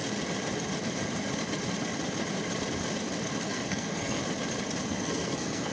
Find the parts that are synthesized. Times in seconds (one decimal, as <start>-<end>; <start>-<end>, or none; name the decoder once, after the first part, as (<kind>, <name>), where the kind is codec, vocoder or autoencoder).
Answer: 3.4-4.2 (codec, SNAC); 4.8-5.7